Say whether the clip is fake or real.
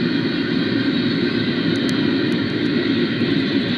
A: real